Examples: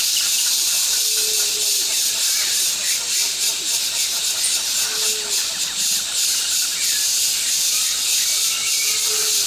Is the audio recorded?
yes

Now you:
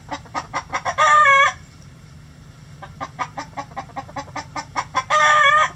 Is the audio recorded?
no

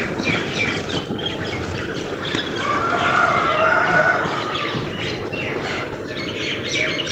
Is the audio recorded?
no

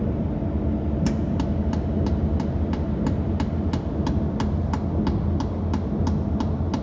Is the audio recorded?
yes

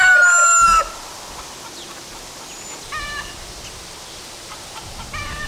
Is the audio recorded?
yes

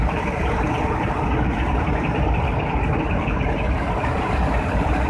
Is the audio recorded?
no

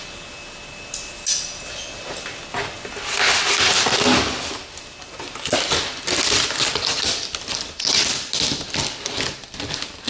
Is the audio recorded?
yes